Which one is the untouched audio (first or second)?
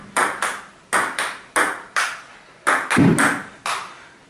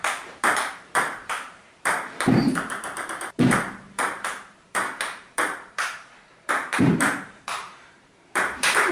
first